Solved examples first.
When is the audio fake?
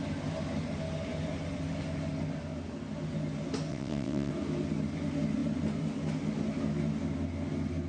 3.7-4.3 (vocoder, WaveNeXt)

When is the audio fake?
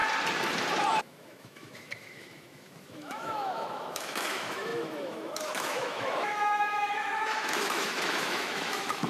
1.0-9.1 (autoencoder, DAC-VAE)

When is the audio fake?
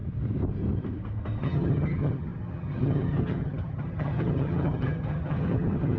1.4-6.0 (vocoder, HiFi-GAN)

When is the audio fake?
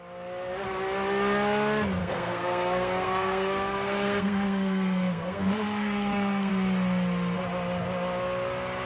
2.0-6.5 (codec, SNAC)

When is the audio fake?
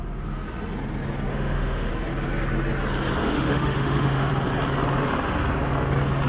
1.3-1.9 (autoencoder, DAC-VAE); 3.2-4.3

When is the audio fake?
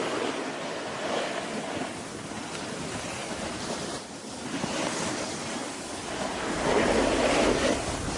3.2-5.1 (vocoder, BigVGAN v2)